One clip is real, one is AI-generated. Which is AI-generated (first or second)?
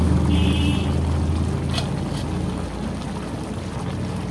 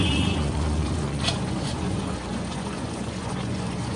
second